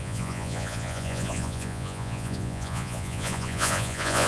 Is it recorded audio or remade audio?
remade